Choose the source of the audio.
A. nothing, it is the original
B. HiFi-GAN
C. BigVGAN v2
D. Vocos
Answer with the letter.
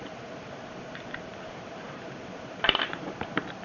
C